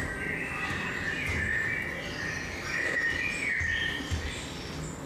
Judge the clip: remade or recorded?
remade